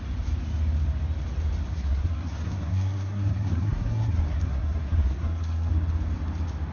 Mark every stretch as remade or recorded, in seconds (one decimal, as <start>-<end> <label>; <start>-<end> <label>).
0.0-1.7 recorded; 1.7-5.7 remade; 5.7-6.7 recorded